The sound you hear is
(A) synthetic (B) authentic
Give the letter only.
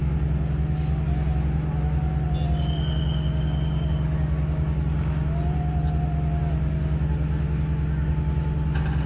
B